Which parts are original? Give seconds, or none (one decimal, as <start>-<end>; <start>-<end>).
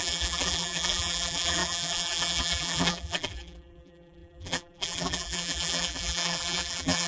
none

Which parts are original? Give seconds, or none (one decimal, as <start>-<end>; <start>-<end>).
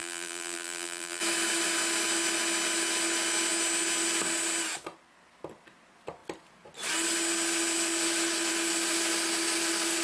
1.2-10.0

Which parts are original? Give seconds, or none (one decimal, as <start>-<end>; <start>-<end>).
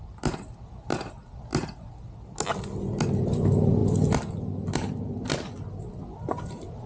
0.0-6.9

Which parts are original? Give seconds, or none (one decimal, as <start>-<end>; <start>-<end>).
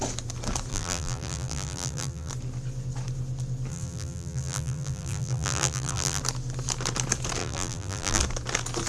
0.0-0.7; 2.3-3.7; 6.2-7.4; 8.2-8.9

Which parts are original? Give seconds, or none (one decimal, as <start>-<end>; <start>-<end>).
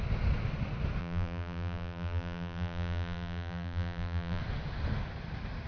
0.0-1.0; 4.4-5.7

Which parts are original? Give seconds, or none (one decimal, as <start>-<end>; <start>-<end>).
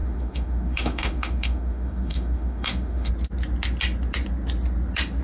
3.1-5.2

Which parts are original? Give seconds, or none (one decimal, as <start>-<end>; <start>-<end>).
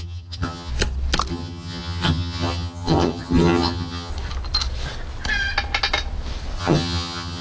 0.7-1.3; 4.1-6.6